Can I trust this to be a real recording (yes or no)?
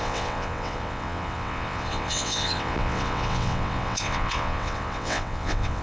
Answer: no